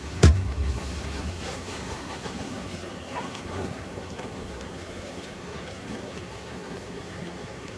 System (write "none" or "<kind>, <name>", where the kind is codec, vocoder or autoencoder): codec, SNAC